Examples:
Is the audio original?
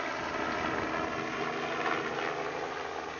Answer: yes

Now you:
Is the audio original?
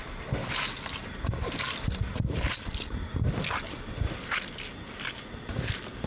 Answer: yes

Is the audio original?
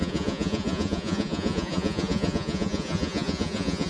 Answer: no